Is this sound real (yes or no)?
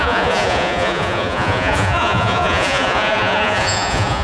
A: no